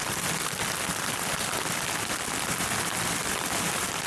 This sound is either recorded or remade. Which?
recorded